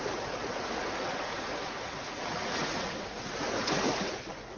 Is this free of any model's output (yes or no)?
no